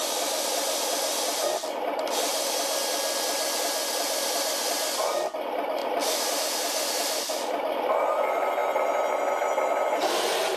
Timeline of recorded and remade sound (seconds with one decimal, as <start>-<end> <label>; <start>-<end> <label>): 0.0-5.8 recorded; 5.8-6.4 remade; 6.4-10.6 recorded